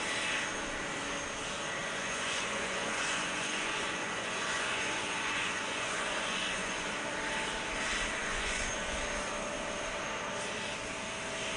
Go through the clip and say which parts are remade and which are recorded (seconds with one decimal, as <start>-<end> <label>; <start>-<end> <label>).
0.0-1.8 recorded; 1.8-6.9 remade; 6.9-8.2 recorded; 8.2-9.0 remade; 9.0-11.6 recorded